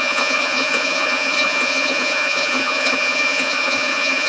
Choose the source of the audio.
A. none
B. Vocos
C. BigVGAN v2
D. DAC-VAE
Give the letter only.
B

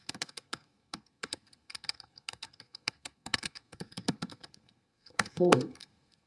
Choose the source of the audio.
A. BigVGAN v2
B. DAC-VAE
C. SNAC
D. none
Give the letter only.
C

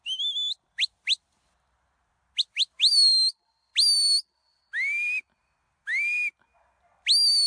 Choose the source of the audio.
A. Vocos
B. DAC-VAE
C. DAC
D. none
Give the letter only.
D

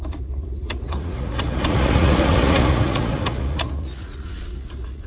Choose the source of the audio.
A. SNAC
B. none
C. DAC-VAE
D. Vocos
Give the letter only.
D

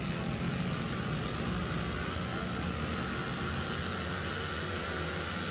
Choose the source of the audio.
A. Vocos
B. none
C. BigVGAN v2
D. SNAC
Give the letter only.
B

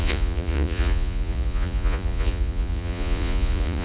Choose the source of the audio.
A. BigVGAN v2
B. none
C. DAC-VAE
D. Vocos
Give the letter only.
D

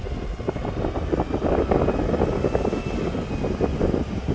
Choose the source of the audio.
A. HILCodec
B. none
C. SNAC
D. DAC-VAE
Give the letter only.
B